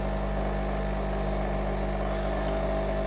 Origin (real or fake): real